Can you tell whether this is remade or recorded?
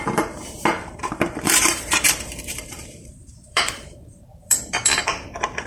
remade